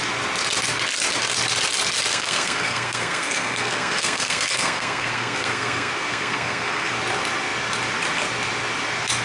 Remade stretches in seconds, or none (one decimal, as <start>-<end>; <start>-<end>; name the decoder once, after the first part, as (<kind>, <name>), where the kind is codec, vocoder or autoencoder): 2.1-6.9 (codec, SNAC)